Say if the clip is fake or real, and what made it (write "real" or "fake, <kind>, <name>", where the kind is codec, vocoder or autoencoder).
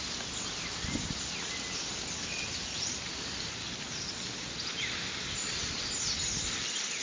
real